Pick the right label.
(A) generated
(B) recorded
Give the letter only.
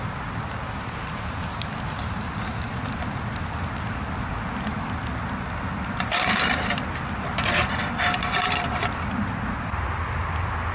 B